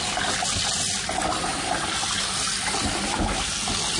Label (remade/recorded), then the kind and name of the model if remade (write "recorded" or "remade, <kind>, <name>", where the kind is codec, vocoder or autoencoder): recorded